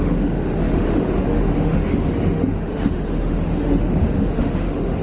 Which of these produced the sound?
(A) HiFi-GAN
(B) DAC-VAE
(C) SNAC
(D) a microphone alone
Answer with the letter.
B